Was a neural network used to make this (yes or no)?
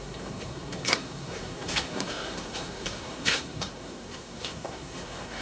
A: yes